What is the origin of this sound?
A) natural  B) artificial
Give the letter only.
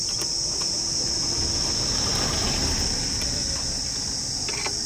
A